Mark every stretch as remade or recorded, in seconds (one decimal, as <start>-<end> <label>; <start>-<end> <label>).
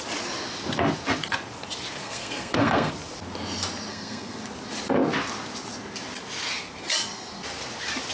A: 0.0-2.0 recorded; 2.0-2.9 remade; 2.9-3.9 recorded; 3.9-4.4 remade; 4.4-8.1 recorded